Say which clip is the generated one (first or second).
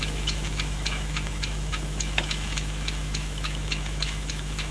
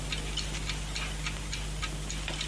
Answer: first